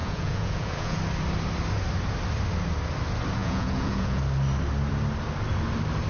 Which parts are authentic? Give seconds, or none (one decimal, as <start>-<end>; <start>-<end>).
1.0-3.4; 4.2-6.1